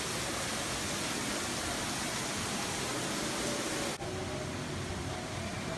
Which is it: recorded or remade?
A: recorded